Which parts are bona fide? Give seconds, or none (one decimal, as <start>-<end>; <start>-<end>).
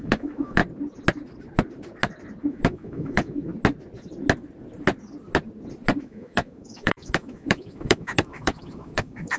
0.6-2.5; 3.5-6.0